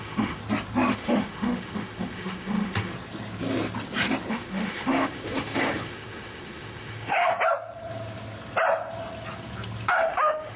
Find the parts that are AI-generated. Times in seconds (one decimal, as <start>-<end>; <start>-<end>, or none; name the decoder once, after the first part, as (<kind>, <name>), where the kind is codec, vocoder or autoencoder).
0.0-0.4 (autoencoder, DAC-VAE); 0.9-2.9; 4.3-7.3; 9.9-10.6